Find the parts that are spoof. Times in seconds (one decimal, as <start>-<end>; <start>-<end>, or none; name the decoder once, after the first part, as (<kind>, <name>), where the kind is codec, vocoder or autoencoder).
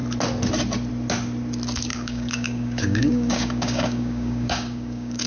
1.9-5.3 (codec, DAC)